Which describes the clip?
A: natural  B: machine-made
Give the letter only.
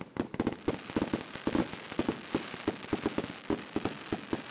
A